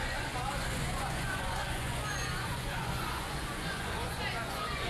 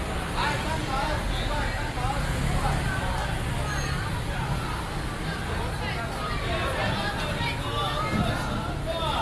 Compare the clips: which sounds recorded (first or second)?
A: second